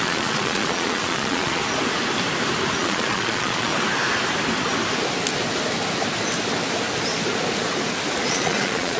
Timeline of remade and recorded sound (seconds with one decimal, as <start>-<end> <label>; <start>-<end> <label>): 0.0-1.6 remade; 1.6-2.8 recorded; 2.8-3.7 remade; 3.7-8.3 recorded; 8.3-9.0 remade